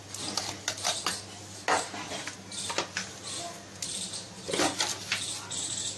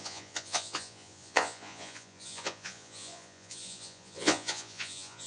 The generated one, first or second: second